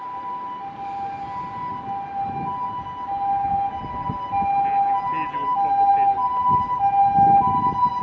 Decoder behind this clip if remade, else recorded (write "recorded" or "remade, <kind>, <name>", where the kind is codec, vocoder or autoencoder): recorded